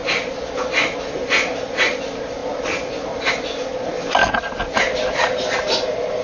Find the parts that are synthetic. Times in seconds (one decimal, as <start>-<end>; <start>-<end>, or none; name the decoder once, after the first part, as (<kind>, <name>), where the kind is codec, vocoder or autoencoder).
none